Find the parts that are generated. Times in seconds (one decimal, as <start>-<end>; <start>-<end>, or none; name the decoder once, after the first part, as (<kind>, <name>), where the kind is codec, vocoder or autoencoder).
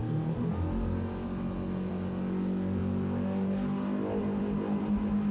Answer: none